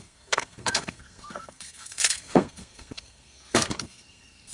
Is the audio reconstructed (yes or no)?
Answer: yes